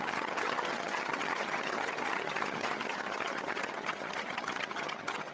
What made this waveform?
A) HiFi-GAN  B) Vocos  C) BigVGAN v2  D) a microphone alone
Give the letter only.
A